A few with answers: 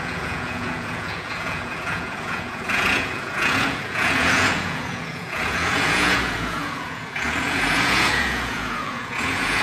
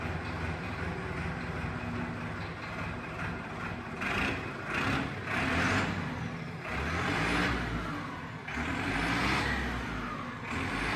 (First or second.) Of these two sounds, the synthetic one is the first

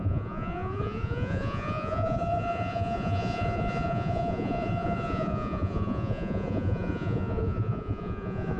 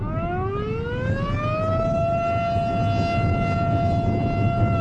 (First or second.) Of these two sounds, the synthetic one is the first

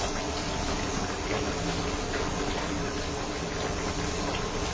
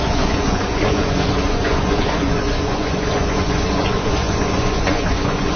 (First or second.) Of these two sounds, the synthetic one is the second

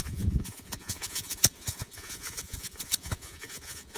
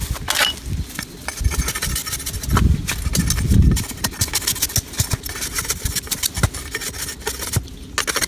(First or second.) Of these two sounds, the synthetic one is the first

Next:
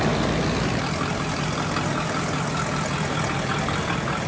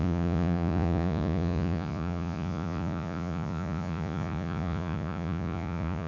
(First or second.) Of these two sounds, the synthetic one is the second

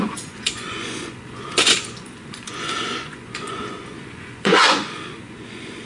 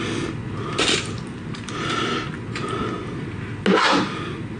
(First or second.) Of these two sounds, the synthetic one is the first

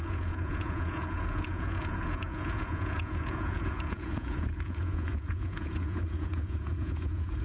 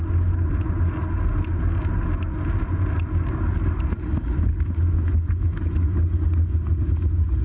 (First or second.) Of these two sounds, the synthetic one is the first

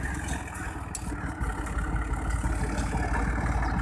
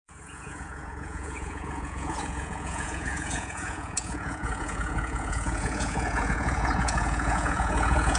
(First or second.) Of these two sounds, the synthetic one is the second